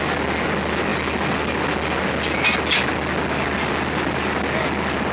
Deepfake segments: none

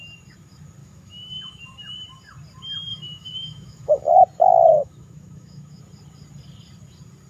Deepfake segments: 0.8-1.6 (autoencoder, DAC-VAE); 2.9-4.1; 4.8-5.8

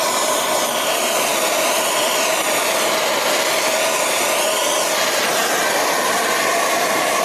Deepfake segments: none